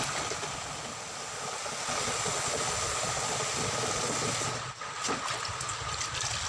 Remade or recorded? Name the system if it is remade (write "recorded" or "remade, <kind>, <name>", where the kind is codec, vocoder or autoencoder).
recorded